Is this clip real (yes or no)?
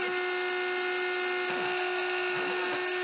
yes